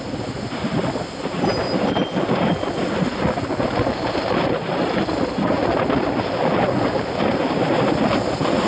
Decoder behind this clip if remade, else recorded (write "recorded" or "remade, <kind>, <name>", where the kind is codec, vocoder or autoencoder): recorded